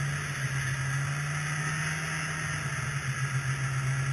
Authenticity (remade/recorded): recorded